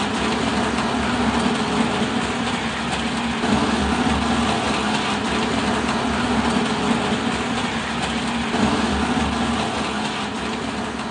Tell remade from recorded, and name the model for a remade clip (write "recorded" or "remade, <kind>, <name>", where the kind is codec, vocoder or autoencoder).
recorded